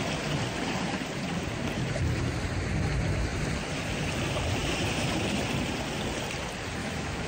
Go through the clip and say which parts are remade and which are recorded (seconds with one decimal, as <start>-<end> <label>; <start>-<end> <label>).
0.0-6.8 recorded; 6.8-7.3 remade